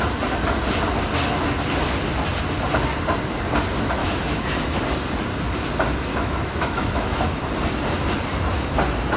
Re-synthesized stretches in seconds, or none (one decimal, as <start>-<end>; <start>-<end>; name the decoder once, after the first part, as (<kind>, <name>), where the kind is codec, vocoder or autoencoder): 4.0-4.8 (autoencoder, DAC-VAE); 6.1-7.4